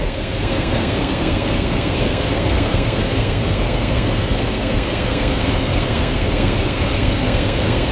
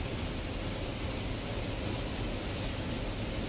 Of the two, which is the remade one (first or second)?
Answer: first